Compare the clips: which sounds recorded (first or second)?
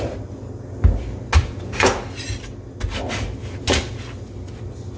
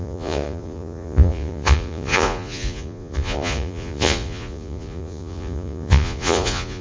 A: first